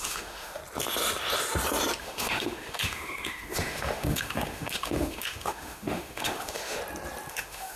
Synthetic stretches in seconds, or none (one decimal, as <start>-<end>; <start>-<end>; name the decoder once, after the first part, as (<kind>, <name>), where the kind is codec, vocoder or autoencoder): 0.0-0.6 (autoencoder, DAC-VAE); 2.0-6.8; 7.3-7.8